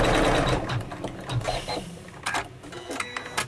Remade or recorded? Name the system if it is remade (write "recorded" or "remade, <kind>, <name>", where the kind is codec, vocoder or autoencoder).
recorded